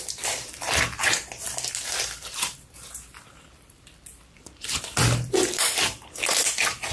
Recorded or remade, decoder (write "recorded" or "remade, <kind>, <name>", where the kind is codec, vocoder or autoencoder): remade, vocoder, BigVGAN v2